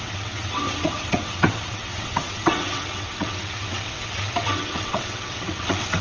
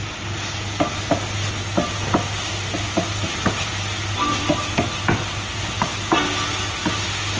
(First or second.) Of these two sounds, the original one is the second